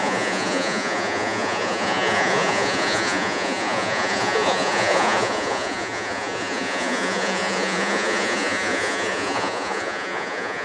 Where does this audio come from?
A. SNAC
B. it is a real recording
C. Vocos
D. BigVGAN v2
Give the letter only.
C